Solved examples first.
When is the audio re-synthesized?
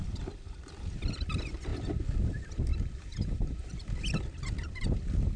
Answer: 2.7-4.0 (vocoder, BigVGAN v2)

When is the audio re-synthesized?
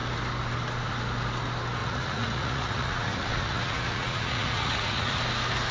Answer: 1.8-5.2 (vocoder, Vocos)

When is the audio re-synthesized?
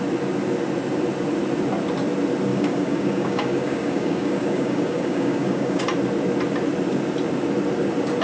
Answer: 2.5-5.8 (codec, DAC)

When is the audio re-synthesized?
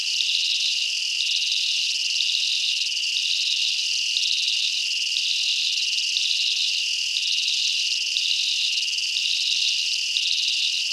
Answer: none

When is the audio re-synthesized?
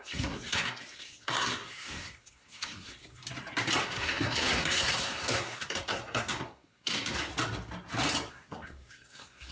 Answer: 0.0-3.2 (codec, SNAC); 3.8-7.3; 8.3-9.5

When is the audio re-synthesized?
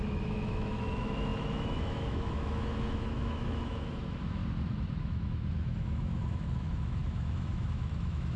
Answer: 0.0-4.4 (autoencoder, DAC-VAE); 5.0-8.4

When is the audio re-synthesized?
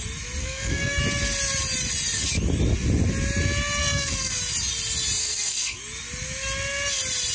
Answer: 0.4-1.0 (codec, SNAC); 3.8-4.4; 5.2-5.8